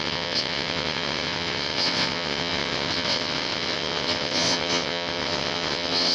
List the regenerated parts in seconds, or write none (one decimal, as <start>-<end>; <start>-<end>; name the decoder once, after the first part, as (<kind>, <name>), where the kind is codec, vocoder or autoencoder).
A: 0.0-6.1 (vocoder, WaveNeXt)